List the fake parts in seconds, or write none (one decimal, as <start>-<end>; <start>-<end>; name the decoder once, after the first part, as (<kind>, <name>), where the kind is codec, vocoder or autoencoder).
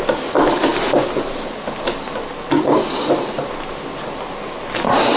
none